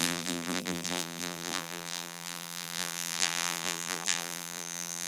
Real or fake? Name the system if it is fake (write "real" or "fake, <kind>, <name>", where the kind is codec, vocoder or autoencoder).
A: fake, vocoder, BigVGAN v2